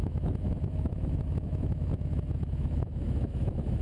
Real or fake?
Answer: fake